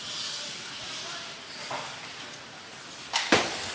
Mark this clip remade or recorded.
recorded